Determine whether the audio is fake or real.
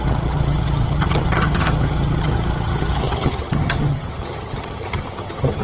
fake